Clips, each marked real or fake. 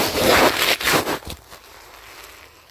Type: fake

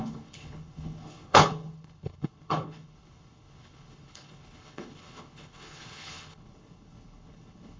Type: fake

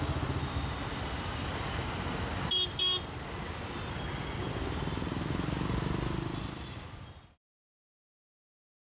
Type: real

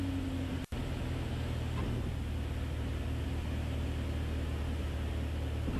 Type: real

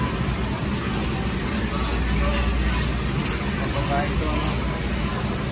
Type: real